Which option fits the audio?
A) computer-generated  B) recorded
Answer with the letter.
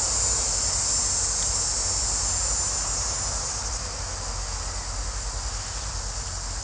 B